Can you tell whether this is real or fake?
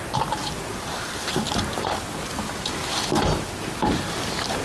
real